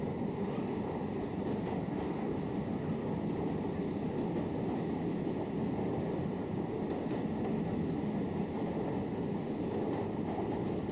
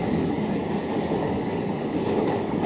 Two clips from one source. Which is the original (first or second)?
first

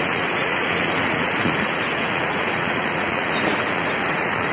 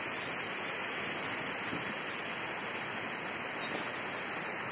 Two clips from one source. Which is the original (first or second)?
second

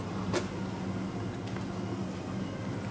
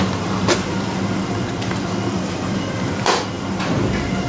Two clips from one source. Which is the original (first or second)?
first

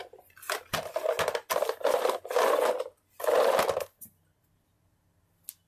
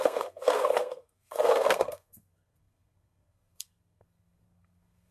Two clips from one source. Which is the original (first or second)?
first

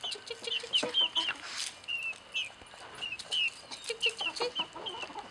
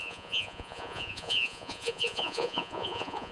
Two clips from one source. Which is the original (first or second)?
first